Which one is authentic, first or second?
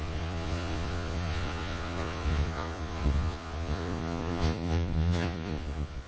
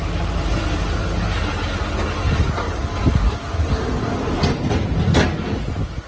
second